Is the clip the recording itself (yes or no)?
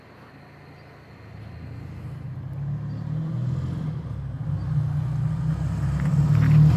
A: yes